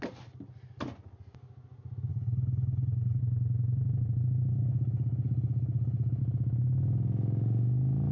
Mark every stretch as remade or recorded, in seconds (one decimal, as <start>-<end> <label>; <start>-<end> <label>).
0.0-2.1 recorded; 2.1-3.2 remade; 3.2-4.5 recorded; 4.5-6.2 remade; 6.2-8.1 recorded

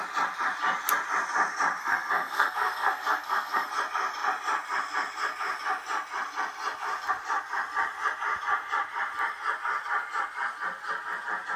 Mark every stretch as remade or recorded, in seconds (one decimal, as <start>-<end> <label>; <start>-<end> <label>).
0.0-1.8 recorded; 1.8-3.7 remade; 3.7-11.6 recorded

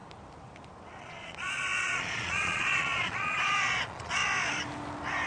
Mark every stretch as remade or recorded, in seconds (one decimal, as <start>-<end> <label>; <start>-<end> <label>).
0.0-1.0 recorded; 1.0-4.2 remade; 4.2-5.3 recorded

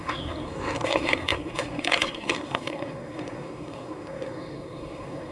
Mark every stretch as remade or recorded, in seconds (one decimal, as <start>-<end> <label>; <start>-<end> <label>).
0.0-5.3 remade

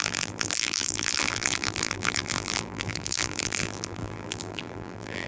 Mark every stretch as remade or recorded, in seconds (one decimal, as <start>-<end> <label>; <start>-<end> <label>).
0.0-5.3 remade

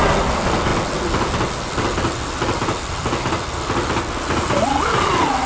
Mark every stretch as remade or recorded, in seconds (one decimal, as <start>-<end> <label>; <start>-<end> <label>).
0.0-5.5 recorded

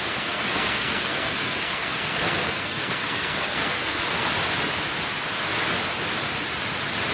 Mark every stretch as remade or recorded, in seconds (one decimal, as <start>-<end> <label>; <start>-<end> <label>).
0.0-4.3 remade; 4.3-7.1 recorded